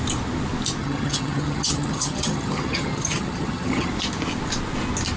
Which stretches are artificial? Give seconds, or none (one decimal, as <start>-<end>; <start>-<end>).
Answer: 0.8-3.9